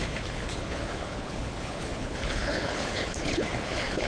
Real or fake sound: fake